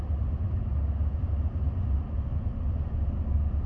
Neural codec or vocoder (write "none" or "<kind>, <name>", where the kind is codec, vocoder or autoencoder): none